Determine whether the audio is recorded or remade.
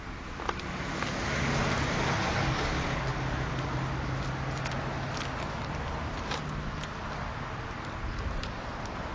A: recorded